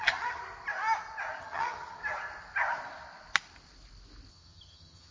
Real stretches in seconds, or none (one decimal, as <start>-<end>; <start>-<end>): 0.4-1.4; 2.0-4.3